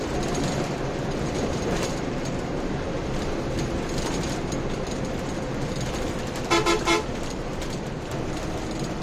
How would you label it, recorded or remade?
remade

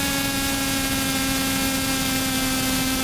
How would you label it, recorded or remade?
recorded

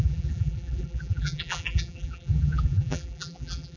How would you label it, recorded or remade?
remade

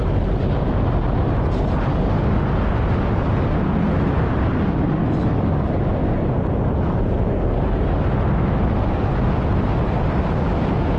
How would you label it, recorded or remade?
recorded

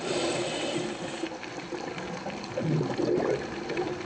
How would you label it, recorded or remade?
remade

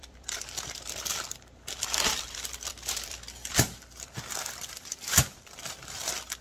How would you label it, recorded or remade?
remade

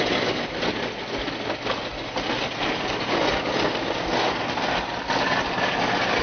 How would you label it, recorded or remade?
recorded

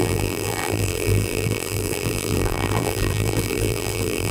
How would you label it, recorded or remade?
remade